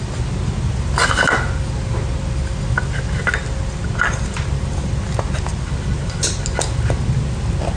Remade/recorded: recorded